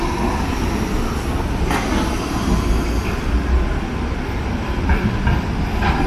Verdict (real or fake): real